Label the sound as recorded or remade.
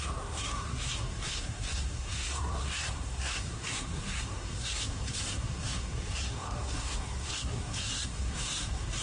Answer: remade